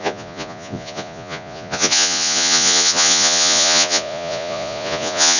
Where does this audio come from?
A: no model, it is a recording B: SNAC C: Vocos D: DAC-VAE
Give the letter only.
C